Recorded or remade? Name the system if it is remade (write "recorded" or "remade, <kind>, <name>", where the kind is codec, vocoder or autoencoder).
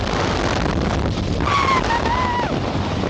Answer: recorded